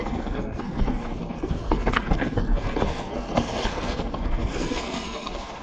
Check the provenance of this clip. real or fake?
fake